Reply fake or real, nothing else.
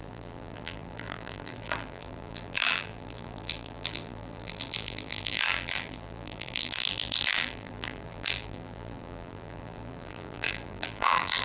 fake